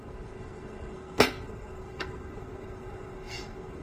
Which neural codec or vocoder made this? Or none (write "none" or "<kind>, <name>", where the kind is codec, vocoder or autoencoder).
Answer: codec, SNAC